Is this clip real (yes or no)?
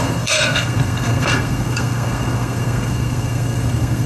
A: no